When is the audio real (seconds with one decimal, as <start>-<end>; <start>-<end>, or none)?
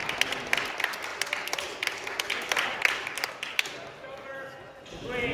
0.0-5.3